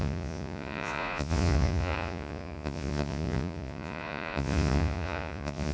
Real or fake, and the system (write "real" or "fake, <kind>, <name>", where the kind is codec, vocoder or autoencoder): fake, vocoder, Vocos